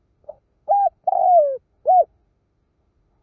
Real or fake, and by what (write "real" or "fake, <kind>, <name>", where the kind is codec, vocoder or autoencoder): fake, autoencoder, DAC-VAE